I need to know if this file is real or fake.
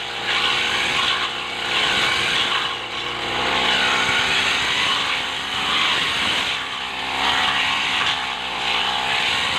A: real